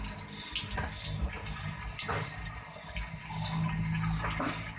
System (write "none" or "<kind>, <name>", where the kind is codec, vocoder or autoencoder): none